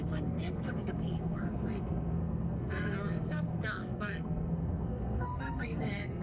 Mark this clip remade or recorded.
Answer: remade